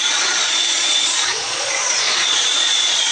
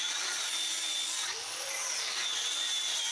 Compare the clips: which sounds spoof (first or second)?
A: first